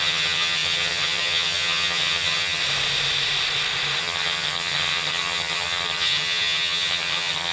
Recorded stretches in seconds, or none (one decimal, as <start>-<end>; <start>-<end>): 2.6-4.0